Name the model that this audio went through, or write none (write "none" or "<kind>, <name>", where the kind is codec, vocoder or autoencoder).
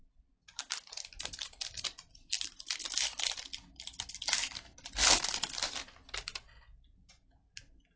none